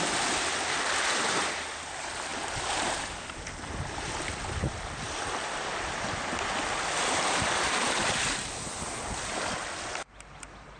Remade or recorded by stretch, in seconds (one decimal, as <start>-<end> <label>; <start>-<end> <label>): 0.0-10.8 recorded

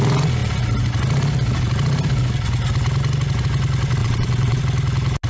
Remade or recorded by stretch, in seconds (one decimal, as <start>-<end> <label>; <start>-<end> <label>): 0.0-4.0 recorded; 4.0-4.6 remade; 4.6-5.3 recorded

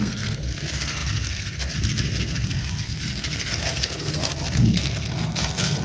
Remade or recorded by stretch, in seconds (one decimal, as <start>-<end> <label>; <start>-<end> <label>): 0.0-5.8 remade

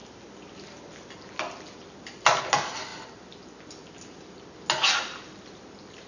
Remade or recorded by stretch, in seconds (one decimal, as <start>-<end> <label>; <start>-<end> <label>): 0.0-6.1 recorded

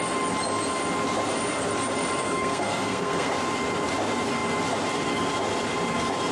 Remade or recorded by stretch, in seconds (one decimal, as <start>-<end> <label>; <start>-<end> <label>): 0.0-2.2 recorded; 2.2-3.3 remade; 3.3-6.3 recorded

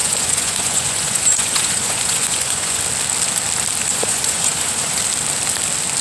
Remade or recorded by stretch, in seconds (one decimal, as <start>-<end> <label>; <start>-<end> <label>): 0.0-2.8 remade; 2.8-3.9 recorded; 3.9-5.0 remade; 5.0-6.0 recorded

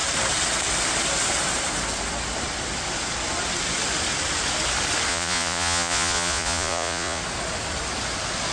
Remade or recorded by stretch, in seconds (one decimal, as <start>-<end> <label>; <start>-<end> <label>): 0.0-5.1 recorded; 5.1-7.2 remade; 7.2-8.5 recorded